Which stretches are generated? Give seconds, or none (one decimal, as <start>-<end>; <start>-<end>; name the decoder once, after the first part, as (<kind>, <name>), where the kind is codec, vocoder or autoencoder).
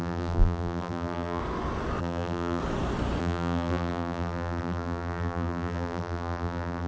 0.0-1.4 (vocoder, BigVGAN v2); 2.0-2.6; 3.2-6.9